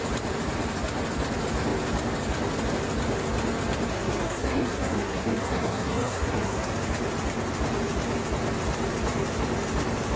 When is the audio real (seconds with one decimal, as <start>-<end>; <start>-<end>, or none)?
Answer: 0.0-3.9; 6.7-10.2